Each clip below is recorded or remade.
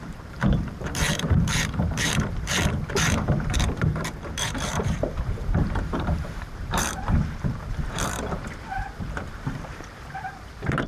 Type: remade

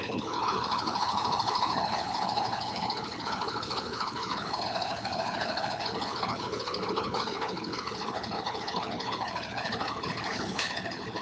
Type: remade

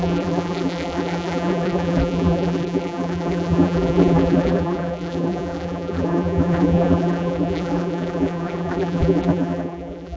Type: remade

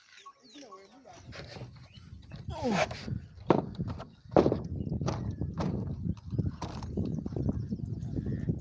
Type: recorded